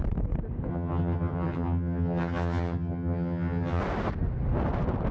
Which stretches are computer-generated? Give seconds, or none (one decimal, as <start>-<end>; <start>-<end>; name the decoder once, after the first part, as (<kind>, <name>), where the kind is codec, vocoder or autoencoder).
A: 0.7-3.8 (vocoder, HiFi-GAN)